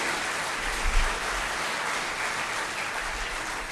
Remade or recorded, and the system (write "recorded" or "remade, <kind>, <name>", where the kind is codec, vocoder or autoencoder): recorded